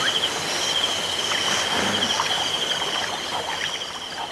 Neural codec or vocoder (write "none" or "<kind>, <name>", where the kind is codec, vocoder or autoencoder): none